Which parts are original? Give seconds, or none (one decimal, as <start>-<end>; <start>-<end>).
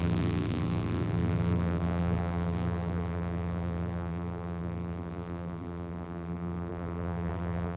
none